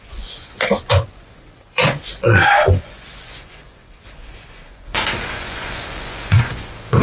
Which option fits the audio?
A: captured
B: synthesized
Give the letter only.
B